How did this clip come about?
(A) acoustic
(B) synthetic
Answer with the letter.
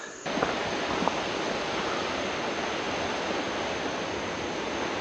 A